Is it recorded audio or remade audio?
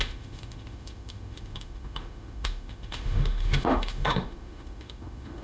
remade